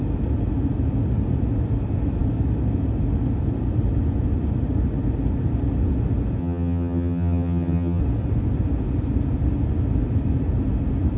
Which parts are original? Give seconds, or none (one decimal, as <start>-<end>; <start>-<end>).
0.0-6.4; 8.0-11.2